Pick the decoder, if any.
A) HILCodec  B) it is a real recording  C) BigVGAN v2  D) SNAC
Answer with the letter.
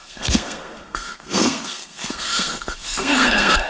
D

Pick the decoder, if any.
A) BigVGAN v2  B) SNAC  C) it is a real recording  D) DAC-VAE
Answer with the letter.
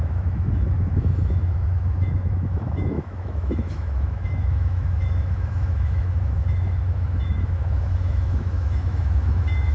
D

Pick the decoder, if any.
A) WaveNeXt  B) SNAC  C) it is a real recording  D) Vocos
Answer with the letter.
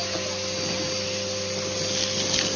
C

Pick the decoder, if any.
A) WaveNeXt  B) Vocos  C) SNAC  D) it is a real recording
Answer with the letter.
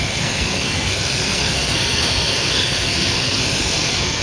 C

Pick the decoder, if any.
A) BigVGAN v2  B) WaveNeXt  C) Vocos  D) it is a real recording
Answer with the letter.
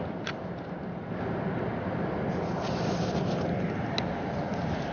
D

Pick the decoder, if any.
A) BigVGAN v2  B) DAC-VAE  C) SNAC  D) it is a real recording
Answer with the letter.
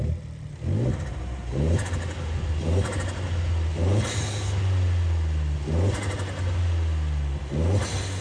D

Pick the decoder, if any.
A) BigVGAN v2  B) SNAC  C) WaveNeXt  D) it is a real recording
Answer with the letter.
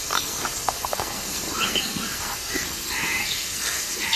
B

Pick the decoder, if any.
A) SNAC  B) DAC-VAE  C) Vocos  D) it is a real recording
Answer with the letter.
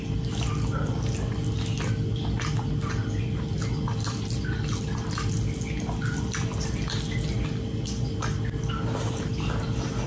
D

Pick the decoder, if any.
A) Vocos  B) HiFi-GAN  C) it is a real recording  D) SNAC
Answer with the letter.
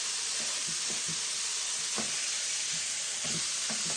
C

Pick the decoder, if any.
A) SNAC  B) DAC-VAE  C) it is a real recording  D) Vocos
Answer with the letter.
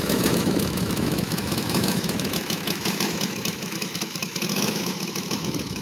B